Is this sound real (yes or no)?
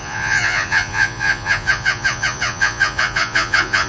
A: no